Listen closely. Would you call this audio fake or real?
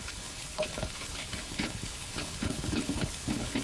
fake